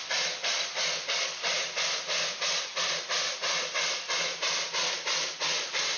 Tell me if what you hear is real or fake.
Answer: real